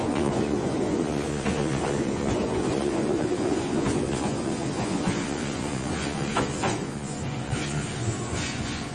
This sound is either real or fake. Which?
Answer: fake